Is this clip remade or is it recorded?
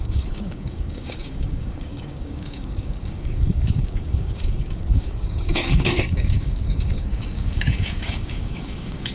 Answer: remade